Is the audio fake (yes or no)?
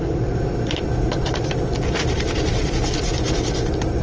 no